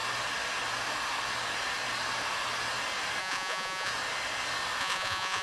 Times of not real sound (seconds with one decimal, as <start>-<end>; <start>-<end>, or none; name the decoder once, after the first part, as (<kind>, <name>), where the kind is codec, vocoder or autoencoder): 3.2-3.9 (vocoder, Vocos); 4.8-5.4